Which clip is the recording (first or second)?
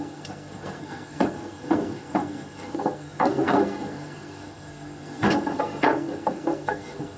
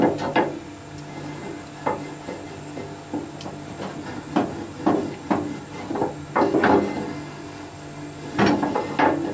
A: second